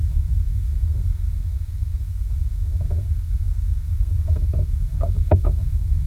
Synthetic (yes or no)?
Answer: yes